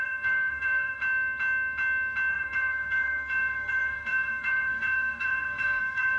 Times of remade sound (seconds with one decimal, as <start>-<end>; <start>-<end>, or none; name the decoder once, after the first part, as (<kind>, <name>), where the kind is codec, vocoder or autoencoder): 0.0-1.0 (codec, SNAC); 2.3-6.2